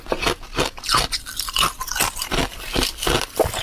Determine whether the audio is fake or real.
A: real